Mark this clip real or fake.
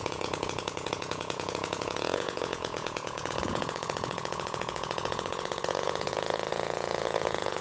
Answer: fake